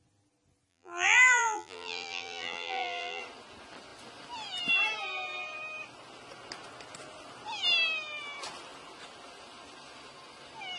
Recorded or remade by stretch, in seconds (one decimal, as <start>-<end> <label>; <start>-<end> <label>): 0.0-0.7 recorded; 0.7-3.2 remade; 3.2-10.8 recorded

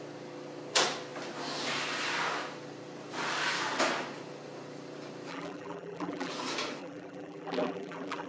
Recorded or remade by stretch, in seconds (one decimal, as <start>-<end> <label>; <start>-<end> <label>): 0.0-5.3 recorded; 5.3-6.3 remade; 6.3-6.8 recorded; 6.8-8.3 remade

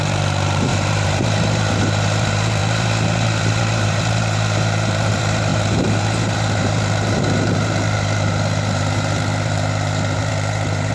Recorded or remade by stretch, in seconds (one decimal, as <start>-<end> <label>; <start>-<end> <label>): 0.0-10.9 remade

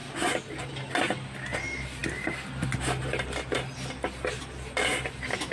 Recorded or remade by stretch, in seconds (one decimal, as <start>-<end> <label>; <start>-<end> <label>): 0.0-5.5 recorded

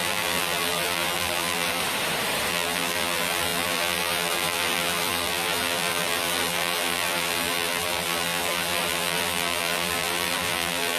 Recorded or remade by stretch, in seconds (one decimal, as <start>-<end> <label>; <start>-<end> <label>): 0.0-1.8 remade; 1.8-2.5 recorded; 2.5-11.0 remade